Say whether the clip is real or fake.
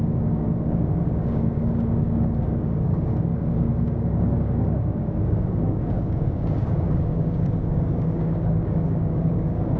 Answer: fake